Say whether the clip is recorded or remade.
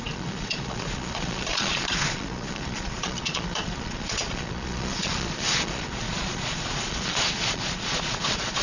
remade